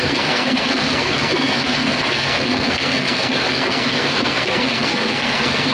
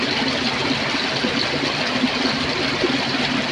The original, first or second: second